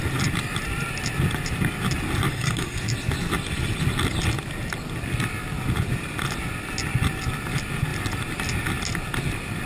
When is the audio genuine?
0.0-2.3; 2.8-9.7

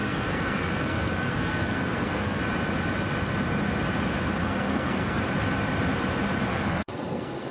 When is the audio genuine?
2.4-4.4; 5.2-6.5

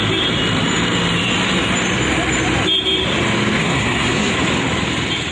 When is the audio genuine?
0.0-3.6; 4.3-5.3

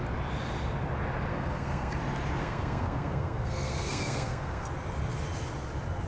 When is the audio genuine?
0.0-1.3; 2.0-2.4; 4.7-6.1

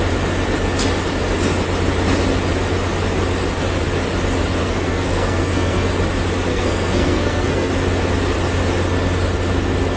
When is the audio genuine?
0.0-4.6; 5.9-6.5; 7.7-10.0

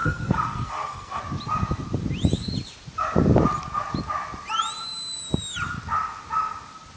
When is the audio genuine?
1.2-7.0

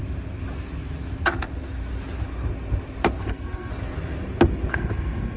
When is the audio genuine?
0.0-3.2; 3.7-4.7

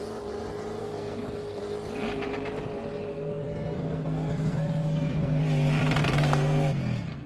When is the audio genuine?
0.0-0.8; 1.6-3.1; 5.4-6.0